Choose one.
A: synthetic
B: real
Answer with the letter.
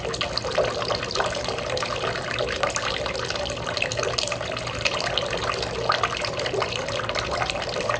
B